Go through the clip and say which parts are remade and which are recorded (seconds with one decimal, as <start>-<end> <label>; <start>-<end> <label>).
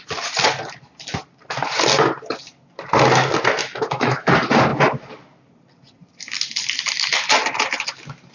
0.0-3.6 recorded; 3.6-4.3 remade; 4.3-8.3 recorded